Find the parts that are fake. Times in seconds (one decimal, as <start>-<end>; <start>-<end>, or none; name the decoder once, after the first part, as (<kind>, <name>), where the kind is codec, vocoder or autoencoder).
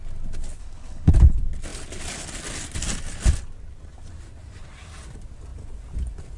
0.6-1.1 (codec, HILCodec)